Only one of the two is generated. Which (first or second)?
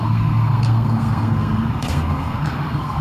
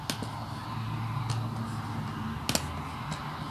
first